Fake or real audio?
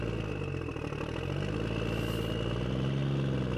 real